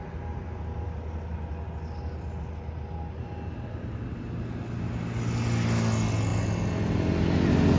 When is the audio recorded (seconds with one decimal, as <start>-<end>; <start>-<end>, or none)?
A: 0.0-7.8